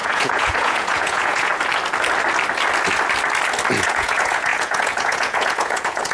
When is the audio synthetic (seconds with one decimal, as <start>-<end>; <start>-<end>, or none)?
0.0-1.5; 3.7-6.1